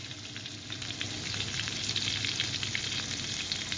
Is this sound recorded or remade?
recorded